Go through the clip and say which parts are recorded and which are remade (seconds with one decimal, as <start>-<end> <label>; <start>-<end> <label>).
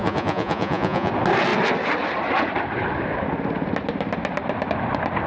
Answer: 0.0-1.1 remade; 1.1-5.3 recorded